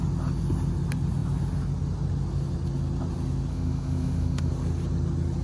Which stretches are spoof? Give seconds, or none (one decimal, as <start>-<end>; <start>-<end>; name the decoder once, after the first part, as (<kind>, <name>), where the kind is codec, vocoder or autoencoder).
3.5-4.5 (autoencoder, DAC-VAE)